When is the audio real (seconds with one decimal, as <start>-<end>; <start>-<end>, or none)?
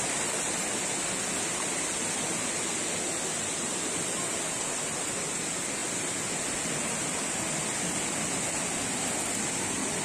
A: 0.0-10.0